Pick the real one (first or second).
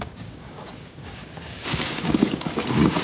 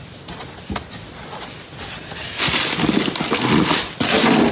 second